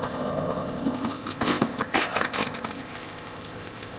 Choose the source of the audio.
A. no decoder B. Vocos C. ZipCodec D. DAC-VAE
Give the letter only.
C